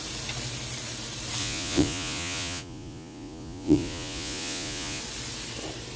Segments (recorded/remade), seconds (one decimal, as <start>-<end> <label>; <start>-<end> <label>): 0.0-1.4 recorded; 1.4-5.0 remade; 5.0-6.0 recorded